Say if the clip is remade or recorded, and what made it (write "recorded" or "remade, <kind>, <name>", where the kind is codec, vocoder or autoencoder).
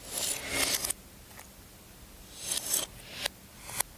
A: recorded